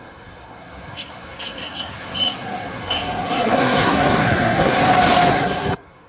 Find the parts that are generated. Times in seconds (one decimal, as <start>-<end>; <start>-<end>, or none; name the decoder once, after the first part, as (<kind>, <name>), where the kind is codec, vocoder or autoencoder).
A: 0.0-4.8 (codec, SNAC); 5.3-6.1